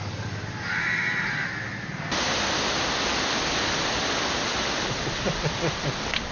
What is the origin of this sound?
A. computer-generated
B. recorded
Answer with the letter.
B